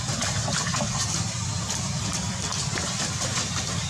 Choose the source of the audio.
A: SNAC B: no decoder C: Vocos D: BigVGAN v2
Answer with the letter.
D